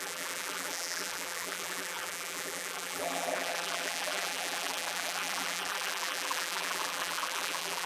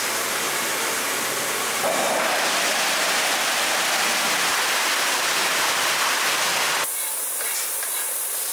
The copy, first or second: first